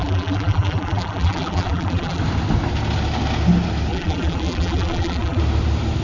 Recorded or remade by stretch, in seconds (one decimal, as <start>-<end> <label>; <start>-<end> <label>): 0.0-2.2 remade; 2.2-3.9 recorded; 3.9-5.4 remade; 5.4-6.0 recorded